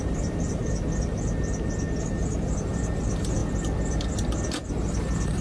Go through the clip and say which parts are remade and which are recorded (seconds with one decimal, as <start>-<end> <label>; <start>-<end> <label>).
0.0-0.6 remade; 0.6-2.1 recorded; 2.1-3.4 remade; 3.4-4.7 recorded; 4.7-5.4 remade